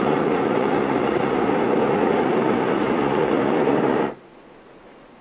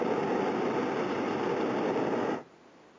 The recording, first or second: second